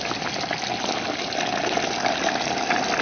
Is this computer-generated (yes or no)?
no